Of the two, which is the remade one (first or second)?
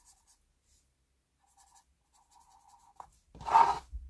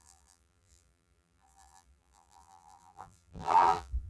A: second